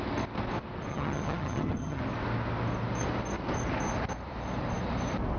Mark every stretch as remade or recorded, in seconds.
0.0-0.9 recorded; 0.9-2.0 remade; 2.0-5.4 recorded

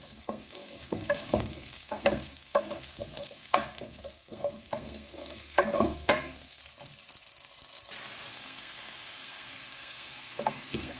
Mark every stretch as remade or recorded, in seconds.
0.0-6.6 remade; 6.6-8.3 recorded; 8.3-11.0 remade

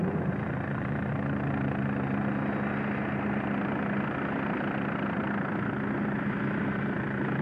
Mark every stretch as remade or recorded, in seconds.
0.0-1.1 remade; 1.1-7.4 recorded